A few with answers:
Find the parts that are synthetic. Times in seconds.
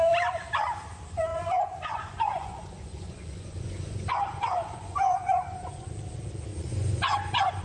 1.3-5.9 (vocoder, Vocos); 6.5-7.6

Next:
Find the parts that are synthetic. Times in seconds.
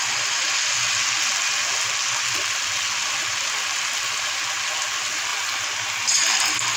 none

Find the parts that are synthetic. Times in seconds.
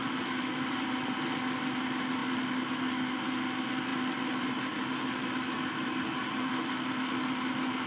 none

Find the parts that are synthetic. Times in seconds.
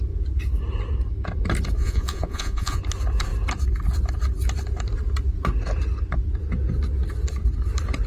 1.8-2.8 (vocoder, Vocos)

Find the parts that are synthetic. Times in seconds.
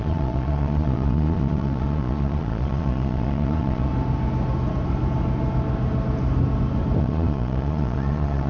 0.0-3.9 (vocoder, Vocos); 7.0-8.5